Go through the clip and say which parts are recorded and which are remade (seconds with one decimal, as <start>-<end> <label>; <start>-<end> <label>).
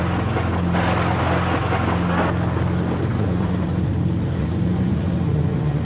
0.0-3.1 recorded; 3.1-3.9 remade; 3.9-4.4 recorded; 4.4-5.8 remade